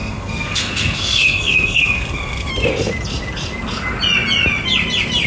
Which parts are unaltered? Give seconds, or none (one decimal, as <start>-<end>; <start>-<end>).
2.5-5.3